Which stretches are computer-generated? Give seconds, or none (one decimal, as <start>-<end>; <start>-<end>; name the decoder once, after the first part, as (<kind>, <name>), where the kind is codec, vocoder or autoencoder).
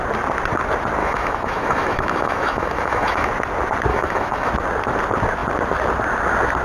1.0-3.3 (autoencoder, DAC-VAE); 3.9-4.5